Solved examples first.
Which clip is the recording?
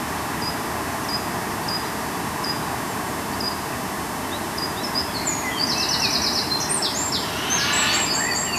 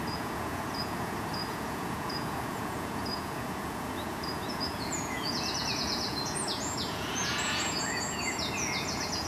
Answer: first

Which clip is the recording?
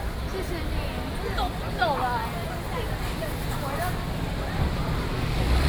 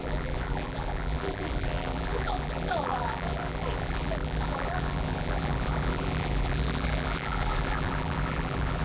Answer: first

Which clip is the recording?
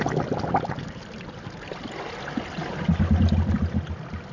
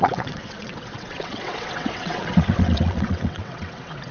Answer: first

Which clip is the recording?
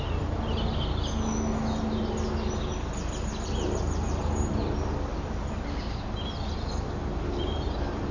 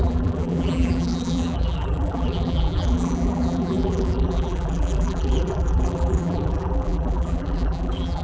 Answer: first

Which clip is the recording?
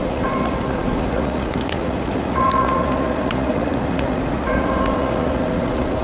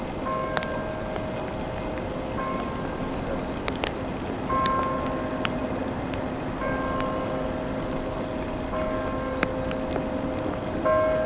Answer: second